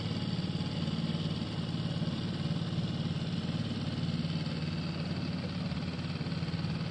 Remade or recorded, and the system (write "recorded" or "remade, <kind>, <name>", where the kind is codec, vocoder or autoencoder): recorded